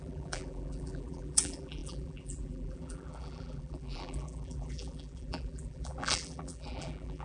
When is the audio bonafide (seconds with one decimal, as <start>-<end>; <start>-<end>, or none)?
none